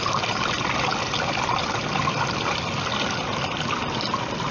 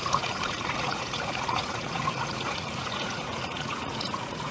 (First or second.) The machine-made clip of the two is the second